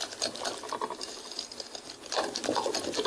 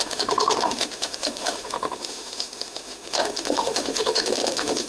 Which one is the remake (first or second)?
second